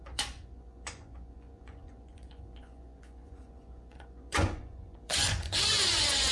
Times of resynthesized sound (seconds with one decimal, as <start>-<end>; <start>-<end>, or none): 0.0-6.3